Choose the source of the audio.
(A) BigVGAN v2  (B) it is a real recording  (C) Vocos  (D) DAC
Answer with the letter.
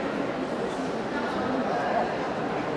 B